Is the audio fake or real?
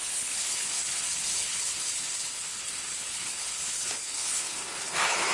fake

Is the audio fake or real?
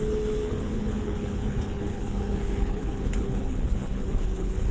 fake